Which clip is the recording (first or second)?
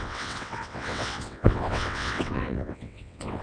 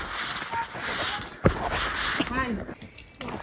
second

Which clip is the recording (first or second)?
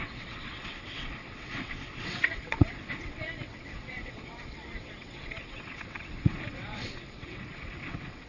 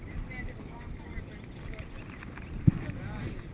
second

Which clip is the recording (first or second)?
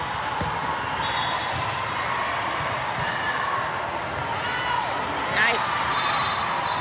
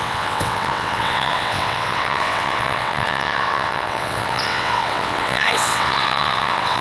first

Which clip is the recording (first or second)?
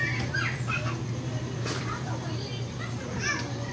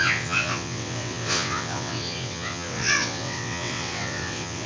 first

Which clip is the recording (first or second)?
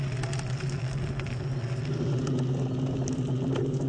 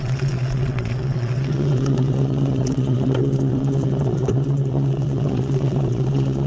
first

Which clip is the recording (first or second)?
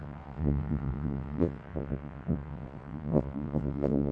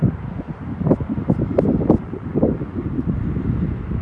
second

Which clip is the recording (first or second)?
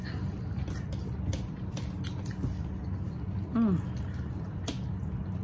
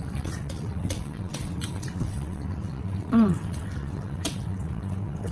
first